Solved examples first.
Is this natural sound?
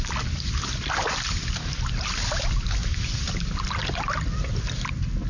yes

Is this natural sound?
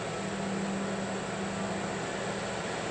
yes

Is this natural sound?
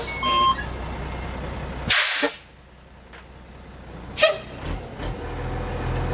yes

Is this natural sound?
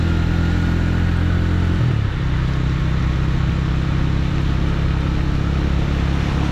yes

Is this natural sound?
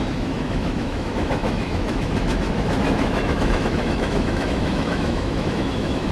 no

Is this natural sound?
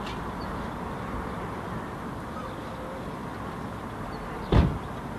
yes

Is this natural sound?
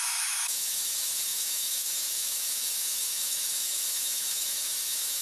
no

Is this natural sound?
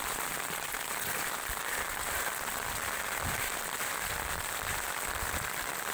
yes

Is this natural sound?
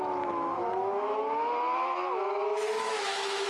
no